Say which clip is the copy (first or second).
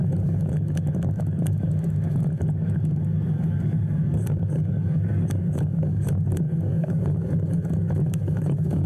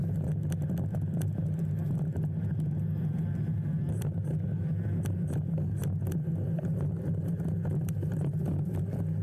first